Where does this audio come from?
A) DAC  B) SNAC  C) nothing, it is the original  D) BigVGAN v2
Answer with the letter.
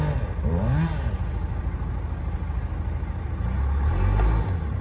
C